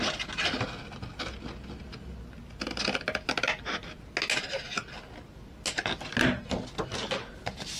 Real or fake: real